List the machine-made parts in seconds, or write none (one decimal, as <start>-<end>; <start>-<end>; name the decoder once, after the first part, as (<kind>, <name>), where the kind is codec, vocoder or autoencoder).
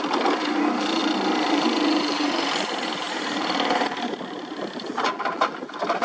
1.0-4.6 (vocoder, BigVGAN v2)